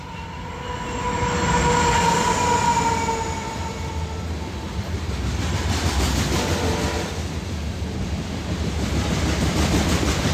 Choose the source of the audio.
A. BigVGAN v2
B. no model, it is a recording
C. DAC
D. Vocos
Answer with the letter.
B